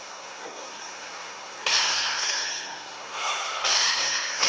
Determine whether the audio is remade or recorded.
remade